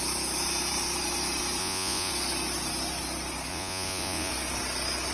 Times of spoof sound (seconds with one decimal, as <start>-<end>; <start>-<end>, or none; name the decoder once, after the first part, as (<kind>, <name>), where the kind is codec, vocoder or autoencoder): 1.6-2.1 (vocoder, Vocos); 3.5-4.3

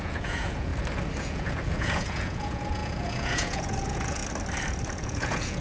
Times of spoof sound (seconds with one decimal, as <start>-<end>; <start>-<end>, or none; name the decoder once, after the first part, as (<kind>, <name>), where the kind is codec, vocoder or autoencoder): 0.0-0.7 (vocoder, Vocos); 1.2-4.2; 4.9-5.6

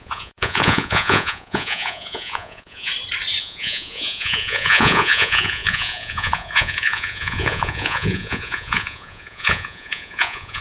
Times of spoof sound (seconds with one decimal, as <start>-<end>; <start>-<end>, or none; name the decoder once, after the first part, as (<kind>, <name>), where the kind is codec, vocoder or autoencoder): 0.0-2.9 (vocoder, Vocos); 3.4-10.6

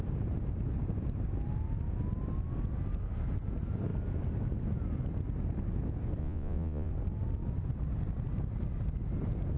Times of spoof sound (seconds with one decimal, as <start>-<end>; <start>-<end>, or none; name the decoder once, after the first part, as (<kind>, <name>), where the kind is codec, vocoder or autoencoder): 6.2-6.9 (vocoder, Vocos)

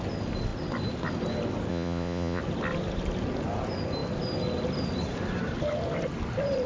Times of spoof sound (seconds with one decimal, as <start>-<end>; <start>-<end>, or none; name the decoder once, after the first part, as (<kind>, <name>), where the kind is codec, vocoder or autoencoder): 1.7-2.4 (vocoder, Vocos)

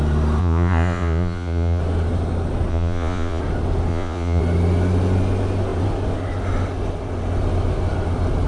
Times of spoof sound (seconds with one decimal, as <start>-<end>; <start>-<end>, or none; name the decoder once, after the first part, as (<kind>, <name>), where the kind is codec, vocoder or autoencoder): 0.4-1.8 (vocoder, Vocos); 2.7-3.4; 3.9-4.4

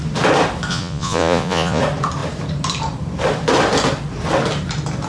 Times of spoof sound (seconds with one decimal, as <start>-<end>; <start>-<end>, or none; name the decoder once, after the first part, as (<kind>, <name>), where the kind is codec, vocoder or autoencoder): 0.7-1.8 (vocoder, Vocos)